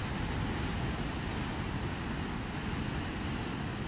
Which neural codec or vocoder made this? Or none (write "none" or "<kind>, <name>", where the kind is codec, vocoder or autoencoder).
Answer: none